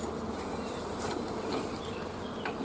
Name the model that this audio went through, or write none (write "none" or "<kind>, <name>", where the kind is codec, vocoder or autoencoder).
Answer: none